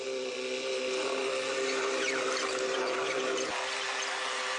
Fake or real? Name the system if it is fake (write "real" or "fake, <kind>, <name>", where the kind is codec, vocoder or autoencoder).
real